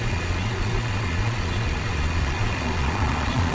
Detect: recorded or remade remade